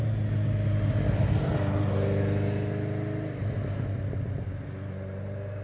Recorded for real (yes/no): yes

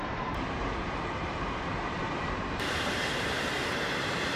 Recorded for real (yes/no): no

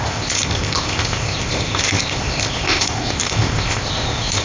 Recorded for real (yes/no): no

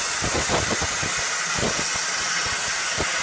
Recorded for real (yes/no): yes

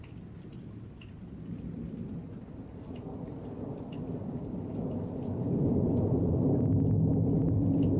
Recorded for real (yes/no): yes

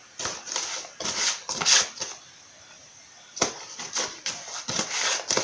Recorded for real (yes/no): yes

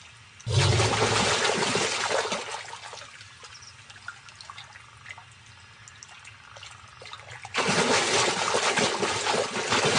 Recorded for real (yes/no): yes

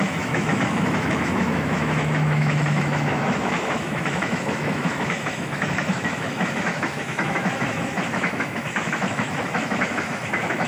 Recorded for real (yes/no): no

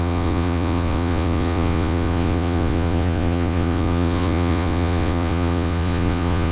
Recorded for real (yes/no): no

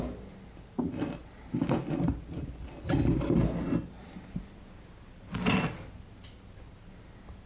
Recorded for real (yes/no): yes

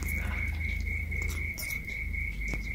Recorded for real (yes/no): yes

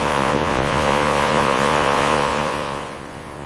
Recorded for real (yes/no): no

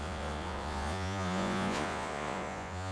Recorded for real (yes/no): no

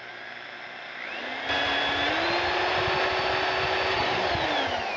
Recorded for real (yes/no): yes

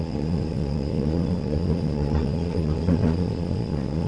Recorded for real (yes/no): no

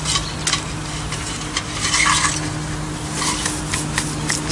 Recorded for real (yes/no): yes